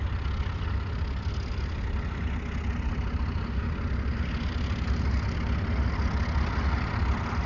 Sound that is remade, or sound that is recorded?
recorded